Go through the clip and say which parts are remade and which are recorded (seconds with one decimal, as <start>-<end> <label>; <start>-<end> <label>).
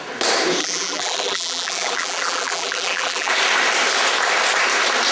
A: 0.0-0.6 recorded; 0.6-3.3 remade; 3.3-5.1 recorded